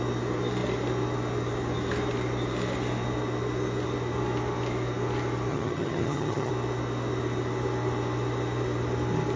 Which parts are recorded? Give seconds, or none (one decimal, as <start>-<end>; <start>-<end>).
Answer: 0.0-5.5; 6.5-9.4